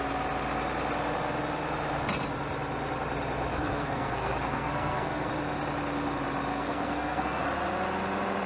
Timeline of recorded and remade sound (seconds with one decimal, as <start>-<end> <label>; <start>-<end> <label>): 0.0-3.5 recorded; 3.5-5.3 remade; 5.3-6.5 recorded; 6.5-7.4 remade; 7.4-8.5 recorded